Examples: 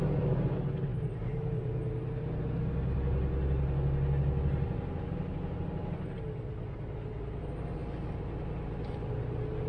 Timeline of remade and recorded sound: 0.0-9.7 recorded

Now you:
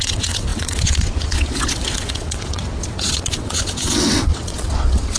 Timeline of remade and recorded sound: 0.0-5.2 remade

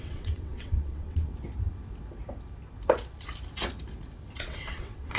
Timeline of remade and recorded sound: 0.0-1.3 remade; 1.3-4.4 recorded; 4.4-5.2 remade